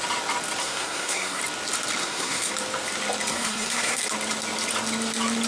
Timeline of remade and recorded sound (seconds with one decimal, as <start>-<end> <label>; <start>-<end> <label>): 0.0-0.6 recorded; 0.6-1.4 remade; 1.4-2.0 recorded; 2.0-2.5 remade; 2.5-3.3 recorded; 3.3-4.0 remade; 4.0-5.5 recorded